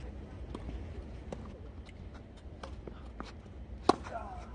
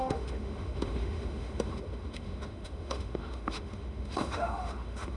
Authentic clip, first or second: first